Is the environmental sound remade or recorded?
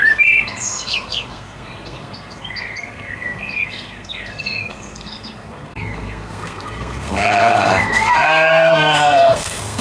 remade